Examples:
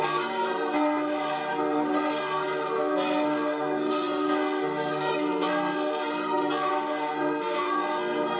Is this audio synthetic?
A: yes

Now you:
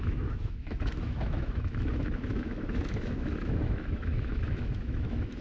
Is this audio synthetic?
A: yes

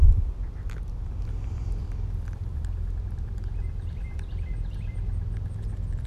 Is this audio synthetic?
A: yes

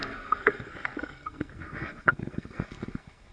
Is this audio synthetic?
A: yes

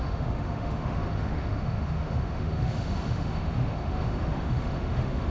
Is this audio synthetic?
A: yes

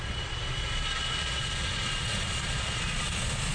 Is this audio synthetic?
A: yes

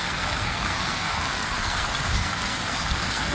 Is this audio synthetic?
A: yes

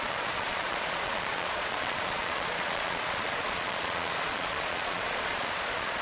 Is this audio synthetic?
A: yes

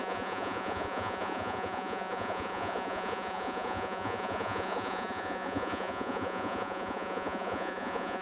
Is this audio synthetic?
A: yes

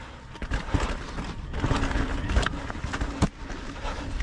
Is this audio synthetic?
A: no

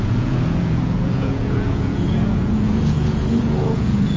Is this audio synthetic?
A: yes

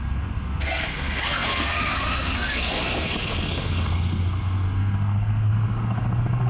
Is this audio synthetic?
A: yes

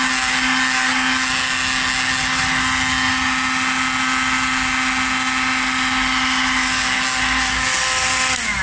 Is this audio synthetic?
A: no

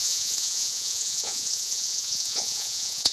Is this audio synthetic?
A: yes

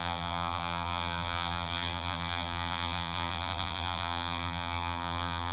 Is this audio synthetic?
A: yes